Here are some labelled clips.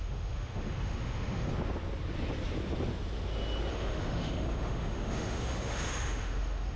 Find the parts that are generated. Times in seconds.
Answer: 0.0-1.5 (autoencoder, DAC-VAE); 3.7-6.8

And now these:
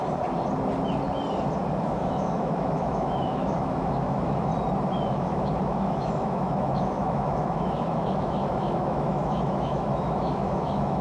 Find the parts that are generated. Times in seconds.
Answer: 1.8-4.5 (autoencoder, DAC-VAE); 5.1-11.0

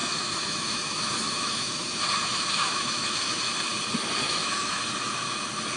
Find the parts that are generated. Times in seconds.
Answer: 0.0-3.5 (autoencoder, DAC-VAE); 4.2-4.8

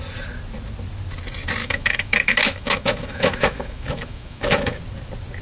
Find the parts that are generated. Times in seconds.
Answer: 1.6-4.8 (autoencoder, DAC-VAE)

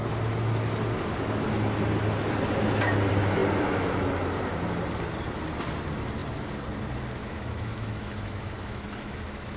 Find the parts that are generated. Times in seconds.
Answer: 7.2-9.6 (autoencoder, DAC-VAE)